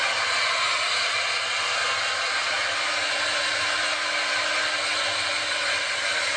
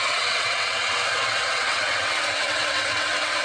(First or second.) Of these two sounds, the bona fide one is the first